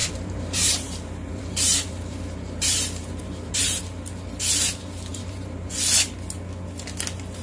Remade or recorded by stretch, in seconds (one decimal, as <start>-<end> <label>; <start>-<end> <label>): 0.0-3.8 remade; 3.8-5.1 recorded; 5.1-5.7 remade; 5.7-7.4 recorded